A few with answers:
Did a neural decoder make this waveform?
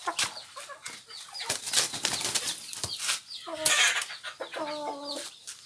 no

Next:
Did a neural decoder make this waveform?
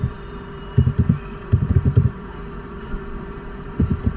yes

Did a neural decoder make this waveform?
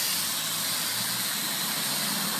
no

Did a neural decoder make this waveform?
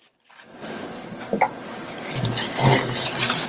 no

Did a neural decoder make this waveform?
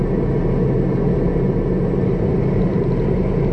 no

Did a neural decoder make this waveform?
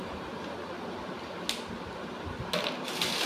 no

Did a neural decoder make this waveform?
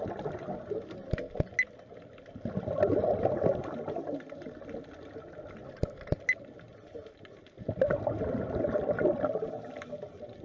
no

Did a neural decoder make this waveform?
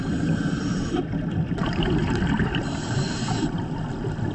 no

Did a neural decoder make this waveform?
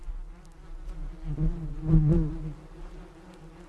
no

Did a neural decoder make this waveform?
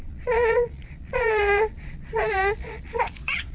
yes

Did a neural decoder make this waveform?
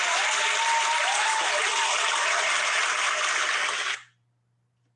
no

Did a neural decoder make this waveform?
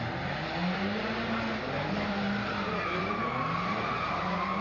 no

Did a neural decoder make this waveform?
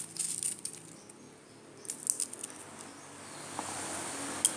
no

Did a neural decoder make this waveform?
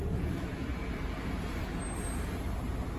no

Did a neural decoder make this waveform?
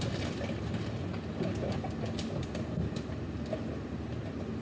no